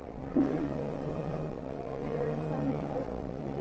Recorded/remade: remade